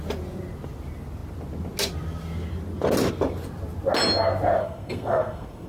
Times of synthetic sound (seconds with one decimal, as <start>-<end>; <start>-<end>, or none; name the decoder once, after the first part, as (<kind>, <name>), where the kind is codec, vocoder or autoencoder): 4.6-5.7 (codec, SNAC)